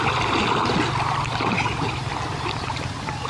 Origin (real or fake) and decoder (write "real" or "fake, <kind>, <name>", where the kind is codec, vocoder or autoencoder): real